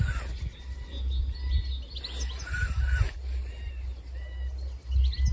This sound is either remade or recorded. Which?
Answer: recorded